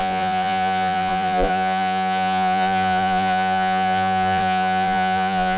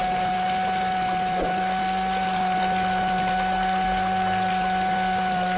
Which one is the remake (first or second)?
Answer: first